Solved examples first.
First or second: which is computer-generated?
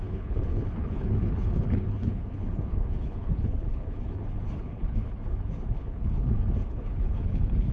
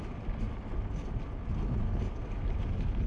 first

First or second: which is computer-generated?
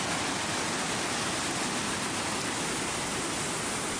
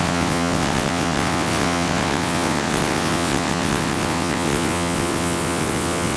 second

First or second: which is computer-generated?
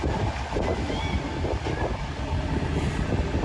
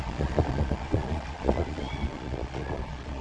second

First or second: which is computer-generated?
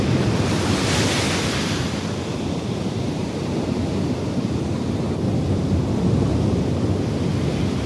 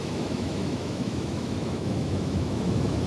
second